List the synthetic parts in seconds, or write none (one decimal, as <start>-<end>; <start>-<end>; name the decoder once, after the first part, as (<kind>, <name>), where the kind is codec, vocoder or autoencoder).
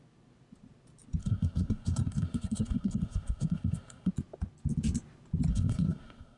1.2-4.1 (codec, SNAC); 5.5-6.4